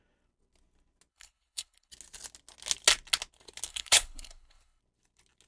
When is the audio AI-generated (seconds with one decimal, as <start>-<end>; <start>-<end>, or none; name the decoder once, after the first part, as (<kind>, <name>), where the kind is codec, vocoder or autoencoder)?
1.1-1.9 (codec, HILCodec); 3.7-4.8